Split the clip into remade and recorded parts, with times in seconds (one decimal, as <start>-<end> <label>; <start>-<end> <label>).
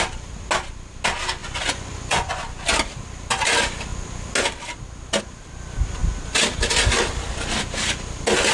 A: 0.0-1.4 recorded; 1.4-2.4 remade; 2.4-8.5 recorded